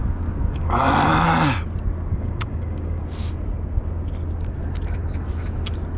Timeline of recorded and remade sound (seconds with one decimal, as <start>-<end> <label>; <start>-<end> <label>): 0.0-0.8 remade; 0.8-2.1 recorded; 2.1-3.0 remade; 3.0-6.0 recorded